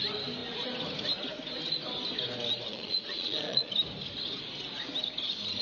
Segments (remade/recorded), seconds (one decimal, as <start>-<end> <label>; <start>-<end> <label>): 0.0-2.7 recorded; 2.7-3.7 remade; 3.7-5.6 recorded